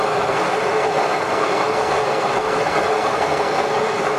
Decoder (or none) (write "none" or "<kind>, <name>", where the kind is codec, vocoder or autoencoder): codec, SNAC